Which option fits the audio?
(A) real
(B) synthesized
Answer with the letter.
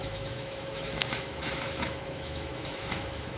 B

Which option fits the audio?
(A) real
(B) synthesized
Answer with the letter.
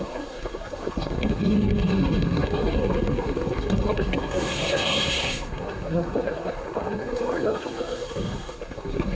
B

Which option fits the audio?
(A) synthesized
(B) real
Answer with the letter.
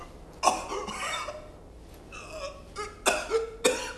B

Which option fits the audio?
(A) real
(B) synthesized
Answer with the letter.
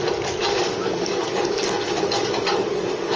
B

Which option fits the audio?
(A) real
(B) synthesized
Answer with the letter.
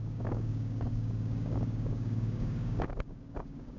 B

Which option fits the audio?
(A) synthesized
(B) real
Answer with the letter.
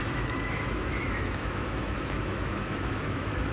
A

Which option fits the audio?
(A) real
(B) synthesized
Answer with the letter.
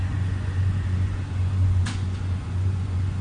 B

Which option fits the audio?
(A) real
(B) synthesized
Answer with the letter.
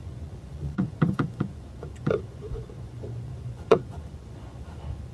B